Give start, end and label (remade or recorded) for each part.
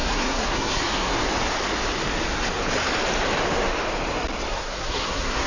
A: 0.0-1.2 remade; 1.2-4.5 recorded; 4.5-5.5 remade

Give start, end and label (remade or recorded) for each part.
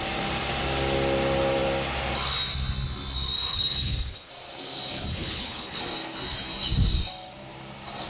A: 0.0-3.5 recorded; 3.5-4.3 remade; 4.3-5.1 recorded; 5.1-5.8 remade; 5.8-8.1 recorded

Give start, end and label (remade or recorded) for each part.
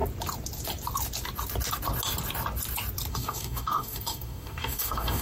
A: 0.0-3.1 recorded; 3.1-5.2 remade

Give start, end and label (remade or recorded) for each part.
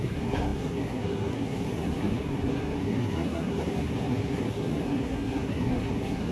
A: 0.0-6.3 remade